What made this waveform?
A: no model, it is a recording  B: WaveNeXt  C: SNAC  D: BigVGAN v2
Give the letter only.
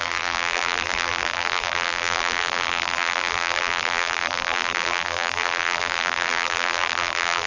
D